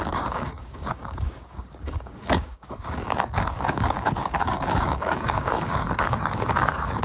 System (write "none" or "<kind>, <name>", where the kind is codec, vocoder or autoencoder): codec, DAC